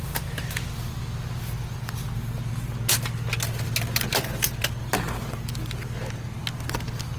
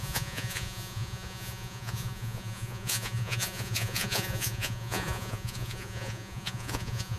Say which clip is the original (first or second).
first